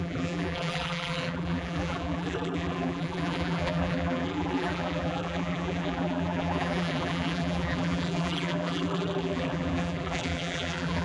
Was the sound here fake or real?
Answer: fake